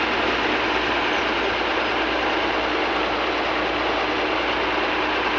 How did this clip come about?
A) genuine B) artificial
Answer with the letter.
A